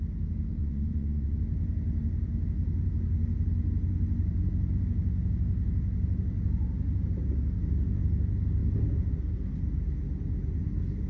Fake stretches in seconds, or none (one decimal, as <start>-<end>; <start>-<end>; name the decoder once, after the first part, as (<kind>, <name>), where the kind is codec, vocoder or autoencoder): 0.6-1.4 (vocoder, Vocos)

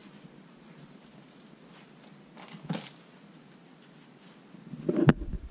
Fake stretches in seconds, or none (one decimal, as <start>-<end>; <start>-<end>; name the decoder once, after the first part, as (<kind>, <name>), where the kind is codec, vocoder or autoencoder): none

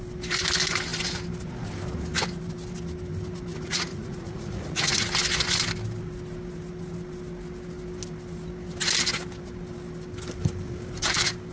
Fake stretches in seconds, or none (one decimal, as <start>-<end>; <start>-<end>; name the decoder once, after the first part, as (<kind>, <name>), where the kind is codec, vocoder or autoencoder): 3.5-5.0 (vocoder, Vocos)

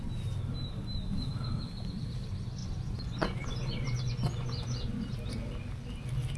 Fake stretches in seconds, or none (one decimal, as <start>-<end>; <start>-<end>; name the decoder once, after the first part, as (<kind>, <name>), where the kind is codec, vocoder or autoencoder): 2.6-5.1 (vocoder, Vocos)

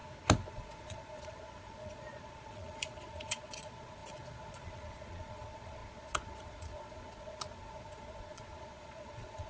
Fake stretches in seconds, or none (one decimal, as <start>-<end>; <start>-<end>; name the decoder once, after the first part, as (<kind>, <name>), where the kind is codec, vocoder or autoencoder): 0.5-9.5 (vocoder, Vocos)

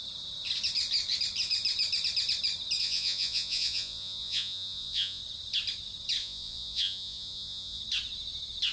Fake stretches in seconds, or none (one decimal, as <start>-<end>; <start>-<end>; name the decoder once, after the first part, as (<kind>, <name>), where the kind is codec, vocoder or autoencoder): 2.8-5.2 (vocoder, Vocos); 6.2-7.8

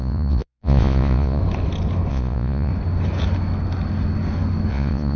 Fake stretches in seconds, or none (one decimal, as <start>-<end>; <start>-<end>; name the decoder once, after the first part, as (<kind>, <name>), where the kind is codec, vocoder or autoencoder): 0.0-1.4 (vocoder, Vocos); 2.1-2.7; 4.7-5.2

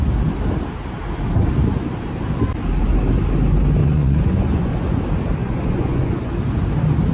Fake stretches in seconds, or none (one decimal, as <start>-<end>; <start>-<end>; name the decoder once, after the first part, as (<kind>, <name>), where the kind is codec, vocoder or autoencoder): 3.8-5.0 (vocoder, Vocos); 5.4-6.3